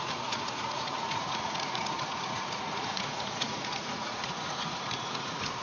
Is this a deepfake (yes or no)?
yes